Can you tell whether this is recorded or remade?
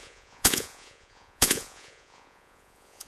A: remade